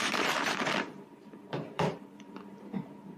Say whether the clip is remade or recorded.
remade